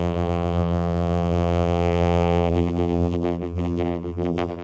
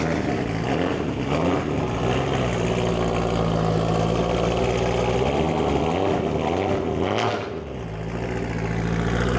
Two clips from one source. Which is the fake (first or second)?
first